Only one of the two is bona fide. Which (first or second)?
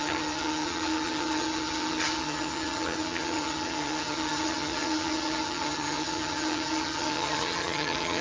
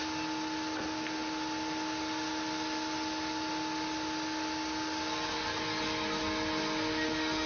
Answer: second